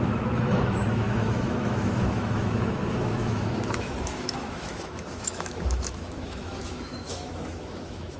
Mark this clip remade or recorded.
remade